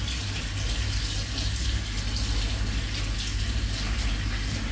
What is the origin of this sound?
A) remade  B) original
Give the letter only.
B